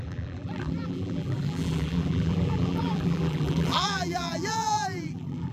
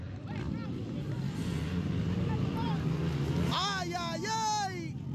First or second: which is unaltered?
second